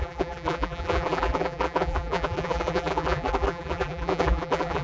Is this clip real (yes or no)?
no